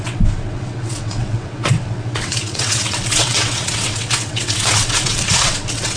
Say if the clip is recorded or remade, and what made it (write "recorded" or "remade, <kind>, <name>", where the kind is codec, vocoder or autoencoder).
remade, vocoder, WaveNeXt